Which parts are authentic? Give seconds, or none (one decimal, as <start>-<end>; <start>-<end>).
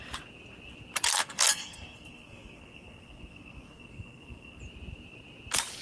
0.0-1.1; 4.6-5.8